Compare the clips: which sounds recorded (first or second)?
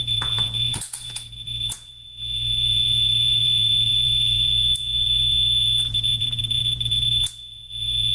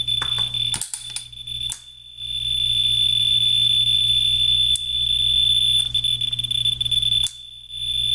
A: second